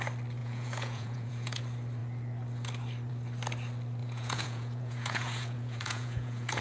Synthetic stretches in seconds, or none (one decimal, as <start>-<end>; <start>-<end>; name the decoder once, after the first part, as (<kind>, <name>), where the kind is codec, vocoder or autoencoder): 0.4-1.6 (vocoder, Vocos); 4.0-6.6

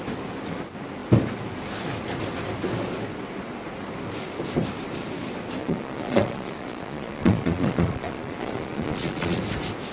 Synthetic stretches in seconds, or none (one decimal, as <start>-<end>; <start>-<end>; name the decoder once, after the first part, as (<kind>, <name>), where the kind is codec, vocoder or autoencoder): 5.6-9.4 (vocoder, Vocos)

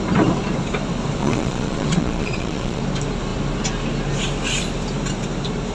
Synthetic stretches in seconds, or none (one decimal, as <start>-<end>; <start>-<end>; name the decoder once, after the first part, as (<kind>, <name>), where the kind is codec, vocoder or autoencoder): 1.2-2.8 (vocoder, Vocos)